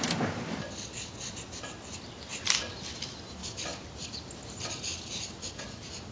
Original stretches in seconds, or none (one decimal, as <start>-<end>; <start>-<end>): 0.0-3.4; 5.2-6.1